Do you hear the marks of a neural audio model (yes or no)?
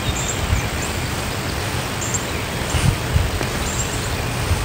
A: no